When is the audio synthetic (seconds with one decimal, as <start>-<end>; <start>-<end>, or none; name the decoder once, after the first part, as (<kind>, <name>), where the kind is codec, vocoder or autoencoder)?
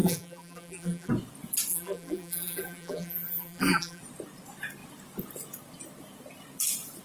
0.0-1.1 (vocoder, BigVGAN v2); 1.7-4.0